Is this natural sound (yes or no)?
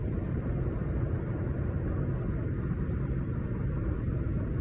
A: yes